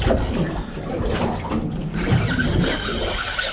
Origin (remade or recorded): recorded